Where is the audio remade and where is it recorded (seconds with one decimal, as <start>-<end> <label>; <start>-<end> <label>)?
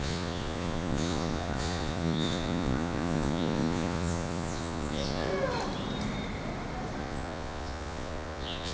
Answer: 0.0-5.3 remade; 5.3-7.0 recorded; 7.0-8.7 remade